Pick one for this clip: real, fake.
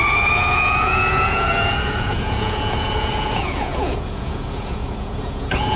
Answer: fake